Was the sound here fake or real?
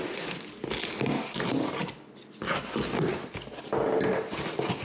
real